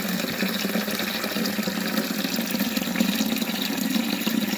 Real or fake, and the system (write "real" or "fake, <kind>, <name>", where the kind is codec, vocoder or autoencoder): real